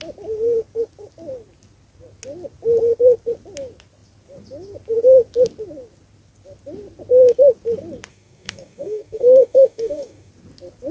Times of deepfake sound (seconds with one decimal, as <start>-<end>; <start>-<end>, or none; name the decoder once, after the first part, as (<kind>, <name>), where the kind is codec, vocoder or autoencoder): 8.1-10.3 (codec, DAC)